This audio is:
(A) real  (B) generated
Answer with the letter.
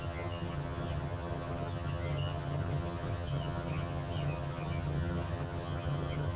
B